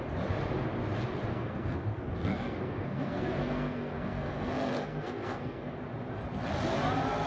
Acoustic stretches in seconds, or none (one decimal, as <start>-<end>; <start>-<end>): 0.0-1.3; 5.7-7.3